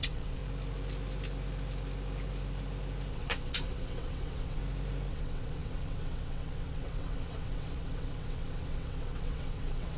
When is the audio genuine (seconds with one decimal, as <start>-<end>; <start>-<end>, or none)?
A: 0.4-3.1; 4.6-5.1